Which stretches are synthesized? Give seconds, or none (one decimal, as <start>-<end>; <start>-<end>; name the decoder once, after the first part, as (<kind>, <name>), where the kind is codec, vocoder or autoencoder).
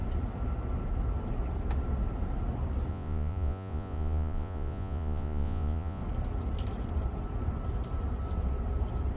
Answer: 2.9-6.0 (vocoder, Vocos)